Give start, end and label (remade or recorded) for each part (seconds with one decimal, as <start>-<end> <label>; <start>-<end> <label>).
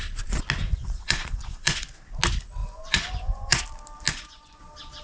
0.0-0.6 recorded; 0.6-1.9 remade; 1.9-2.6 recorded; 2.6-3.6 remade; 3.6-4.1 recorded; 4.1-4.6 remade; 4.6-5.0 recorded